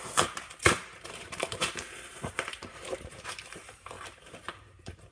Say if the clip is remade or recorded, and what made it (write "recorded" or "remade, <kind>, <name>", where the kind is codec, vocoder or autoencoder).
remade, vocoder, BigVGAN v2